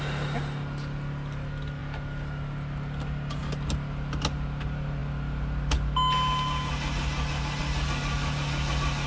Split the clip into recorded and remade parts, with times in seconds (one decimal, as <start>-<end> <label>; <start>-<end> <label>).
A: 0.0-9.1 recorded